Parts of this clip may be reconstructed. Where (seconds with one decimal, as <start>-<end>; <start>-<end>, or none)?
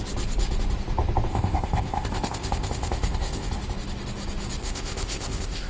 1.3-3.5; 4.6-5.7